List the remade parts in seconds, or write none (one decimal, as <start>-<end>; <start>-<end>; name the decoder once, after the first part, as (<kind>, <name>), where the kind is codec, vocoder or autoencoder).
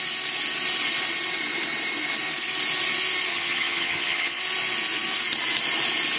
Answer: 3.3-4.4 (vocoder, HiFi-GAN)